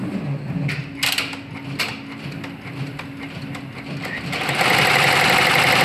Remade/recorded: recorded